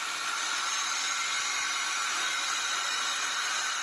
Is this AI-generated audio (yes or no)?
no